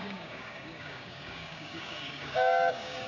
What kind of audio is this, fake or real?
fake